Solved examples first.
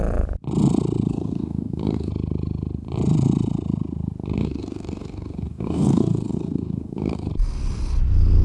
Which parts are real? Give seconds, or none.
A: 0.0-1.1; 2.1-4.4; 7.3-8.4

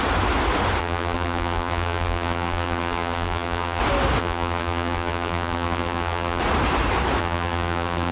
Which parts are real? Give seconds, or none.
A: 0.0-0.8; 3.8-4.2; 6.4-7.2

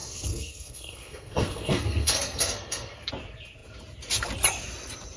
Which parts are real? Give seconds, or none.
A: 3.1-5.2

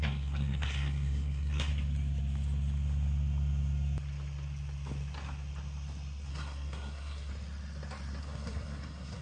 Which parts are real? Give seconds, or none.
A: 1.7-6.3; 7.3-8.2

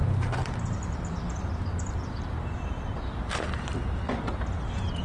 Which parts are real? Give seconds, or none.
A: 2.7-5.0

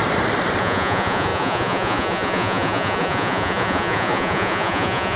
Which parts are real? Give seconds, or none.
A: 0.0-0.6